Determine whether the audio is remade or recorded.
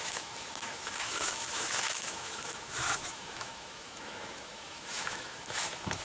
remade